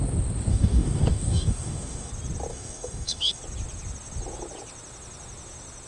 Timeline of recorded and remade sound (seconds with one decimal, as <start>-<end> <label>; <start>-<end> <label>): 0.0-0.5 recorded; 0.5-2.1 remade; 2.1-2.5 recorded; 2.5-3.4 remade; 3.4-5.9 recorded

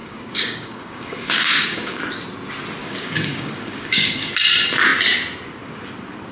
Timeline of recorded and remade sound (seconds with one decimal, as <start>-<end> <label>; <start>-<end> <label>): 0.0-2.0 remade; 2.0-2.8 recorded; 2.8-4.3 remade; 4.3-6.3 recorded

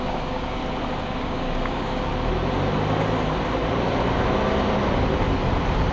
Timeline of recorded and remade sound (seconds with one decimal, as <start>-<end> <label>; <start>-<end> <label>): 0.0-0.6 remade; 0.6-1.2 recorded; 1.2-2.1 remade; 2.1-5.9 recorded

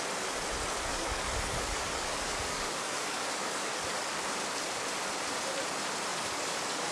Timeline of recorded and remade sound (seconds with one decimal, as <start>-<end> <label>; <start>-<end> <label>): 0.0-0.9 recorded; 0.9-4.2 remade; 4.2-6.1 recorded; 6.1-6.9 remade

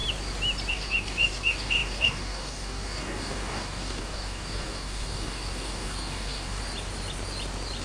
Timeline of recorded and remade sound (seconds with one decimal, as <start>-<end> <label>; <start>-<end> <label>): 0.0-0.7 recorded; 0.7-6.6 remade; 6.6-7.8 recorded

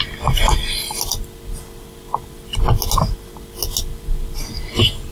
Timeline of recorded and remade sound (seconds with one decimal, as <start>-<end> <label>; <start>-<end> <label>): 0.0-5.1 recorded

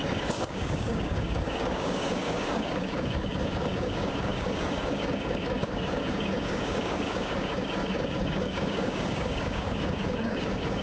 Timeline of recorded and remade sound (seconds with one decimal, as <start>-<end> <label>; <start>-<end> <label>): 0.0-10.8 remade

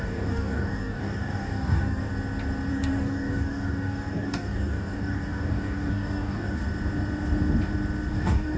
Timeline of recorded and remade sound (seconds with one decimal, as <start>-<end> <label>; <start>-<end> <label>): 0.0-2.1 remade; 2.1-2.7 recorded; 2.7-6.6 remade; 6.6-8.1 recorded; 8.1-8.6 remade